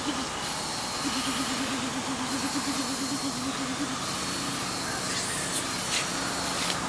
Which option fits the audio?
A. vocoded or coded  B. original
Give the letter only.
B